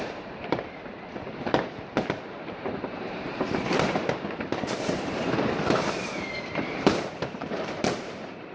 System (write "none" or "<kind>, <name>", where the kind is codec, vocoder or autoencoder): vocoder, BigVGAN v2